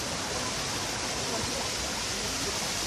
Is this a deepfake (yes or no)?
no